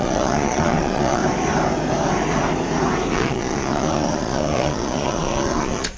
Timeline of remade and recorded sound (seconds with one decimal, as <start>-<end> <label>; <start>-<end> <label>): 0.0-1.2 remade; 1.2-3.1 recorded; 3.1-6.0 remade